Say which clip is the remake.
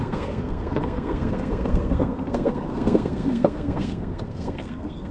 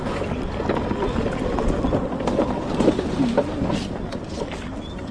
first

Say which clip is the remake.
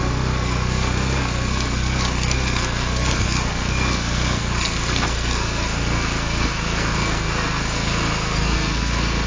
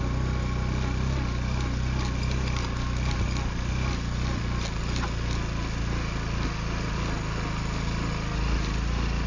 first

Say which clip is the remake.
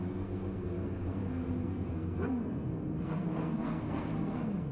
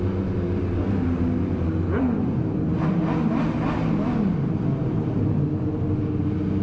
first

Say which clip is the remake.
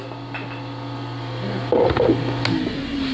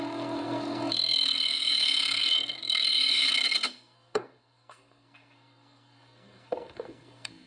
second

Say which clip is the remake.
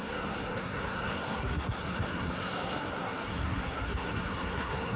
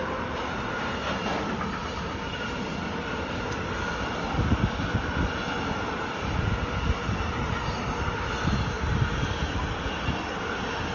first